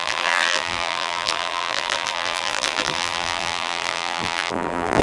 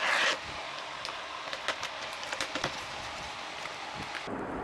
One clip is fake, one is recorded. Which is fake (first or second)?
first